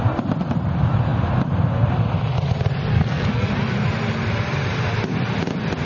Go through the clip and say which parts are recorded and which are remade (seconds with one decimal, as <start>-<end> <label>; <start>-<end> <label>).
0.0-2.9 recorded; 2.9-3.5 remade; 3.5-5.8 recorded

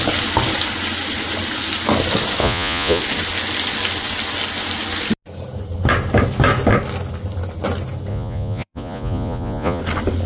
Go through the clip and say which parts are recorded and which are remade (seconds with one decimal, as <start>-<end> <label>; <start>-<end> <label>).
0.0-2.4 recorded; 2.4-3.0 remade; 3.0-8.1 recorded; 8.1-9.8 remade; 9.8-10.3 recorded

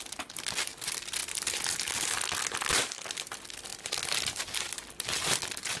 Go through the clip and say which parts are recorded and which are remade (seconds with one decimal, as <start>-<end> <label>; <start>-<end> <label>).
0.0-3.7 recorded; 3.7-5.8 remade

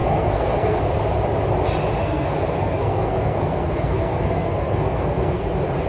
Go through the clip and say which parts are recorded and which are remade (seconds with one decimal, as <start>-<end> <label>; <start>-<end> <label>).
0.0-0.8 remade; 0.8-2.0 recorded; 2.0-5.5 remade; 5.5-5.9 recorded

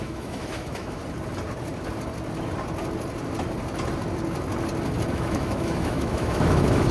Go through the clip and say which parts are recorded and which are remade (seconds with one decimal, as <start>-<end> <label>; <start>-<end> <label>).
0.0-1.0 remade; 1.0-5.1 recorded; 5.1-6.9 remade

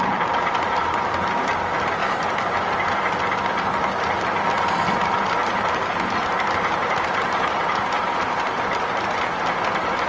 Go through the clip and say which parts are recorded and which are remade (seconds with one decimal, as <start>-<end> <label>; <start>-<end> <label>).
0.0-10.1 recorded

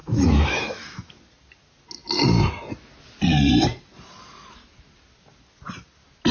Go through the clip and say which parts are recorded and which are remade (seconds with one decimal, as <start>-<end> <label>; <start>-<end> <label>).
0.0-1.1 remade; 1.1-6.3 recorded

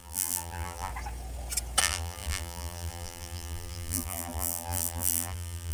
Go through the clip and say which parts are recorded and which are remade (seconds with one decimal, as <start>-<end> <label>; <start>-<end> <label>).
0.0-0.9 remade; 0.9-1.8 recorded; 1.8-5.7 remade